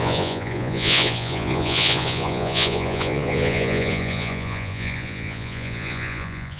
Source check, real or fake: fake